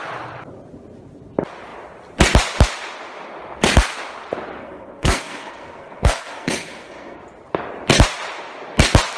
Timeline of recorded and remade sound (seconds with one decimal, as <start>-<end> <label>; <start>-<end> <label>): 0.0-4.6 recorded; 4.6-7.2 remade; 7.2-9.2 recorded